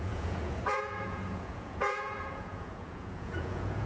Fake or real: fake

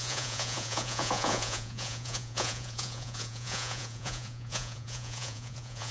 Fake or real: fake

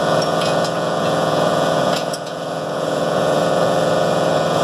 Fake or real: fake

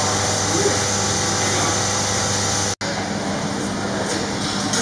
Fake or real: real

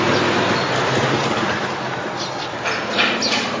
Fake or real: real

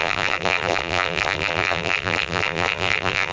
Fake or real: fake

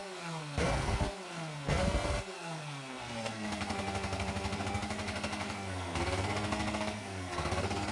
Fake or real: fake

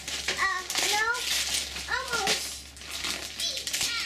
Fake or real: real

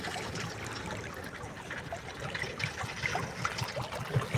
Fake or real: real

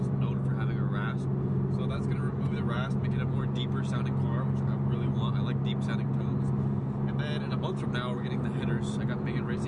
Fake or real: real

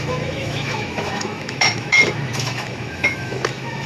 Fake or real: fake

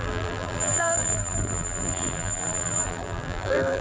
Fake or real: fake